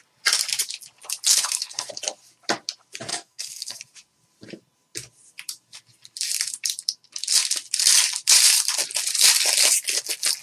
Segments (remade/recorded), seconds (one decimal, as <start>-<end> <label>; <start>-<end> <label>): 0.0-1.3 recorded; 1.3-1.9 remade; 1.9-3.1 recorded; 3.1-3.8 remade; 3.8-10.4 recorded